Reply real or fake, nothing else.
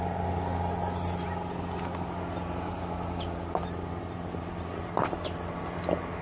real